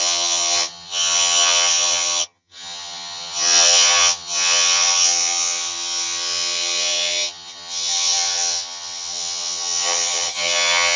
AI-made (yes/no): yes